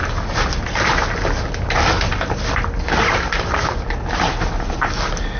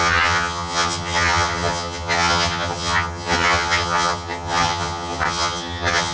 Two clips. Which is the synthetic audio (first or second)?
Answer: second